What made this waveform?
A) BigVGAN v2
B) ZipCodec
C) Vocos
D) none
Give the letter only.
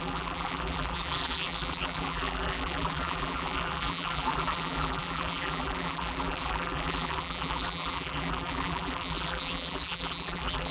A